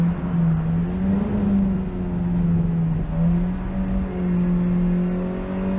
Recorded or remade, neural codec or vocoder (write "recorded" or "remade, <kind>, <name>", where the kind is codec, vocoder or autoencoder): recorded